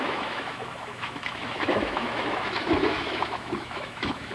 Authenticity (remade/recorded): remade